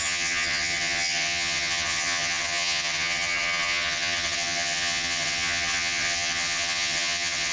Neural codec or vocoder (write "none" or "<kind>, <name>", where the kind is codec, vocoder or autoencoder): vocoder, HiFi-GAN